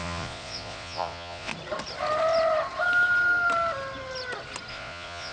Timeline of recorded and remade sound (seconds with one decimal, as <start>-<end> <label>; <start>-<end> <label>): 0.0-1.5 remade; 1.5-4.7 recorded; 4.7-5.3 remade